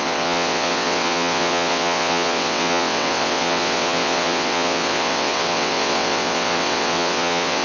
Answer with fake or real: fake